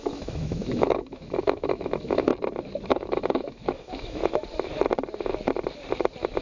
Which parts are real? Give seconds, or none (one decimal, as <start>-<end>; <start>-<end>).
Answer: 2.3-2.9; 4.2-6.4